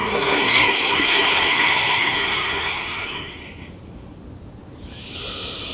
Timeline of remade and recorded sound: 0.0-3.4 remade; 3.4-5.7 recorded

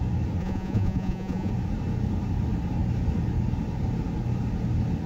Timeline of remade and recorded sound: 0.0-0.4 recorded; 0.4-1.5 remade; 1.5-5.1 recorded

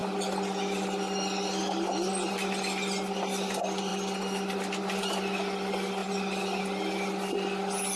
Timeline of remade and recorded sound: 0.0-8.0 recorded

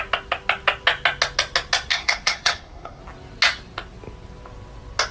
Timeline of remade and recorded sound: 0.0-1.9 recorded; 1.9-3.0 remade; 3.0-5.1 recorded